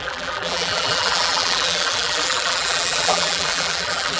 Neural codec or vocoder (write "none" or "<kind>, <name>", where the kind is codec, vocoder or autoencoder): vocoder, BigVGAN v2